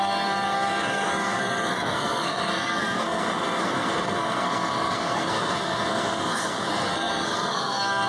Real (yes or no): no